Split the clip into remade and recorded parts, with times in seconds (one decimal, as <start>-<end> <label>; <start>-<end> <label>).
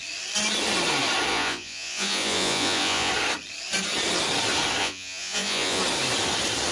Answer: 0.0-1.3 recorded; 1.3-3.1 remade; 3.1-4.8 recorded; 4.8-5.8 remade; 5.8-6.7 recorded